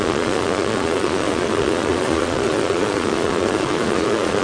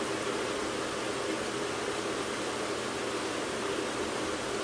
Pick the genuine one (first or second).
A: second